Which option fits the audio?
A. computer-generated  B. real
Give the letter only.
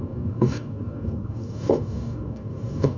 A